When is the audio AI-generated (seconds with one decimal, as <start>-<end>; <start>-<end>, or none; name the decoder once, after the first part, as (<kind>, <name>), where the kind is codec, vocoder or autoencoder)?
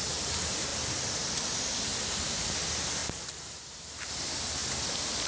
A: 0.7-2.5 (vocoder, BigVGAN v2)